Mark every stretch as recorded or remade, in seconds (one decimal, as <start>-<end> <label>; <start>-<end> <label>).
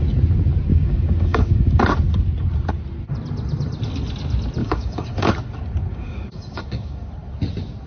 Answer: 0.0-0.7 recorded; 0.7-1.8 remade; 1.8-4.6 recorded; 4.6-5.3 remade; 5.3-5.9 recorded; 5.9-7.1 remade; 7.1-7.9 recorded